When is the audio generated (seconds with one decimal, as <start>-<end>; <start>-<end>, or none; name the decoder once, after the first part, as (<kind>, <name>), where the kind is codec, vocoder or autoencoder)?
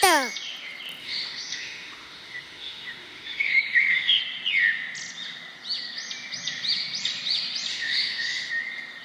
1.0-4.2 (autoencoder, DAC-VAE); 7.7-8.5